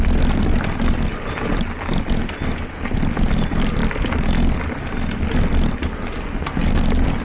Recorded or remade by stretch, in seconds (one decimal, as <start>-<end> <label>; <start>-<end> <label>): 0.0-7.2 recorded